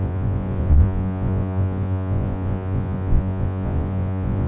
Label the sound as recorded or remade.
remade